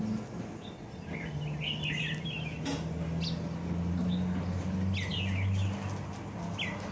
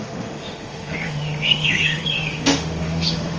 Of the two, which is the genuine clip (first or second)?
first